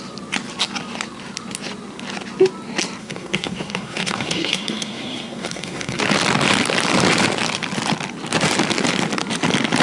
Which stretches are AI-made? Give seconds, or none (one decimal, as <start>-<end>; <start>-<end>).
3.0-6.0